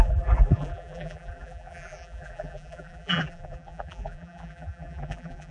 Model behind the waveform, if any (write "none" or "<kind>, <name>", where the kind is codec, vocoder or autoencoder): vocoder, BigVGAN v2